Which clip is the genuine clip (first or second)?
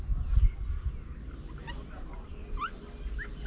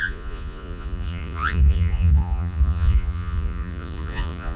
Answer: first